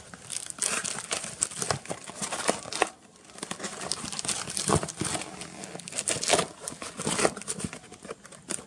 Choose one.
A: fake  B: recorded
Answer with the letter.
B